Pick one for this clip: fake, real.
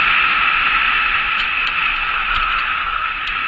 real